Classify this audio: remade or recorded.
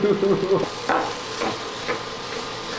recorded